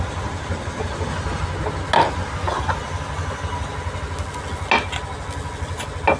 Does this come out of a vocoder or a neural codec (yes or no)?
no